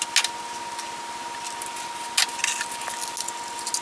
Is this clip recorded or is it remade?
recorded